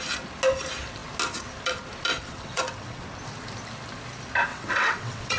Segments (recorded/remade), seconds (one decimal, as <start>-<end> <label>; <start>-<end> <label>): 0.0-2.1 recorded; 2.1-3.0 remade; 3.0-4.5 recorded; 4.5-5.4 remade